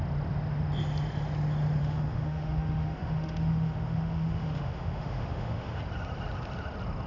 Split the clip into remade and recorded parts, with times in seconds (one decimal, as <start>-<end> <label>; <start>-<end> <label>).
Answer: 0.0-1.8 recorded; 1.8-5.8 remade; 5.8-7.1 recorded